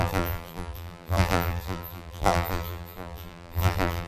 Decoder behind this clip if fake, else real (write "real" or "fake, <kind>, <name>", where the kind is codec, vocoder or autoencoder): fake, vocoder, BigVGAN v2